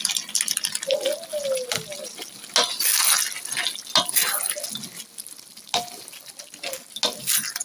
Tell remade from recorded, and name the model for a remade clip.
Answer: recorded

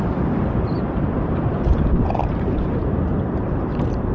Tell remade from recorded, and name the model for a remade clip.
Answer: remade, vocoder, BigVGAN v2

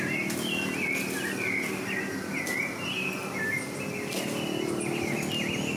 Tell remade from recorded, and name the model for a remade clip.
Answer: recorded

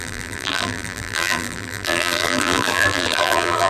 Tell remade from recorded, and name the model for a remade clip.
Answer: remade, vocoder, BigVGAN v2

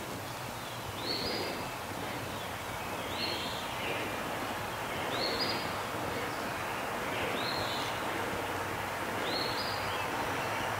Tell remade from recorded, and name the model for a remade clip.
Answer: recorded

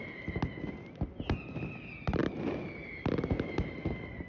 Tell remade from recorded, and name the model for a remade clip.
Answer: recorded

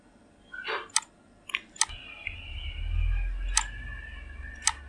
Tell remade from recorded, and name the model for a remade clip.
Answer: recorded